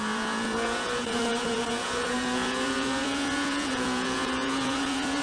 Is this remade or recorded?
remade